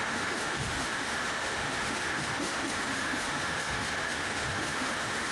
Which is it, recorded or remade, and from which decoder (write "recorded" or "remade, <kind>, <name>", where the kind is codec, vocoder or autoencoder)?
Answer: remade, autoencoder, DAC-VAE